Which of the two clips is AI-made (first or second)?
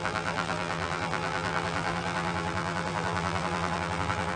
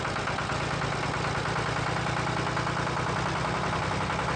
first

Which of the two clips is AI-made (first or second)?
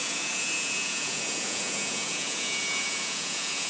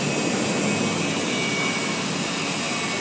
first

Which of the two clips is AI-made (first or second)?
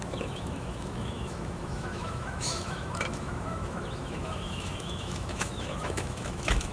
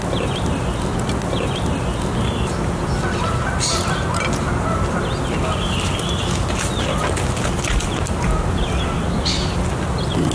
first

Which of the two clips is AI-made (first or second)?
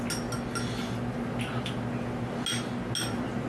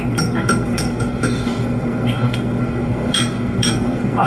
second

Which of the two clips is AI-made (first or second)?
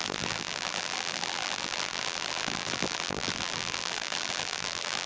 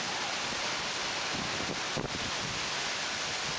first